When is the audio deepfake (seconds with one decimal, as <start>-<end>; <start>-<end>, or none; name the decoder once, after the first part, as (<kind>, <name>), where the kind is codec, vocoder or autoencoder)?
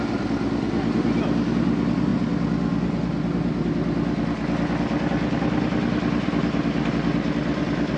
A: none